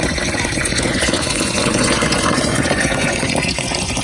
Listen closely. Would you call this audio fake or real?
fake